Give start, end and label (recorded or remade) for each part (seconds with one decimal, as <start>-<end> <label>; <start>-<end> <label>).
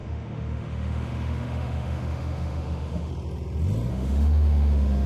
0.0-3.1 remade; 3.1-3.9 recorded; 3.9-5.1 remade